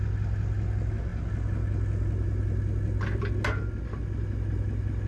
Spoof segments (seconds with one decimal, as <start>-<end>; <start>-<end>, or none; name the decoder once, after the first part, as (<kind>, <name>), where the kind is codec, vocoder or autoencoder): none

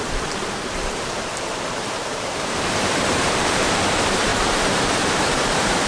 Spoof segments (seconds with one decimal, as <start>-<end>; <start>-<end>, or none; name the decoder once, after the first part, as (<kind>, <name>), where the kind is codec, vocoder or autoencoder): 0.0-5.9 (vocoder, BigVGAN v2)

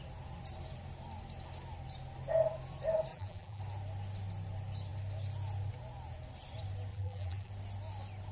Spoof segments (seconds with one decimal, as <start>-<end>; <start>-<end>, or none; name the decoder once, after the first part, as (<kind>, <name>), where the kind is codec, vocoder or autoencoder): 3.1-3.6 (vocoder, BigVGAN v2); 6.9-7.5